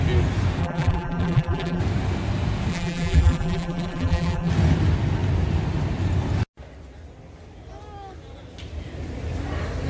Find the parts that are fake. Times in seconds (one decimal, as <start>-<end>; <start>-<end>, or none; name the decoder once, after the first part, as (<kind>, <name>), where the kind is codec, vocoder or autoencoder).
0.6-1.8 (vocoder, BigVGAN v2); 2.7-4.5